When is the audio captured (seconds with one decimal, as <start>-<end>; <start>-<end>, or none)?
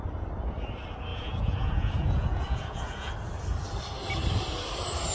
0.0-1.1; 3.1-5.1